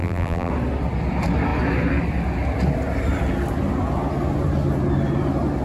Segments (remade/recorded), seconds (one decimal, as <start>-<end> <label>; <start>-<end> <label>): 0.0-0.5 remade; 0.5-5.6 recorded